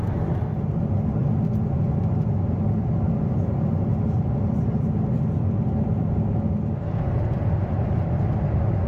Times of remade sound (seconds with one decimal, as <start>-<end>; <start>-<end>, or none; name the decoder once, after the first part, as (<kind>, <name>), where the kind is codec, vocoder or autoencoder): none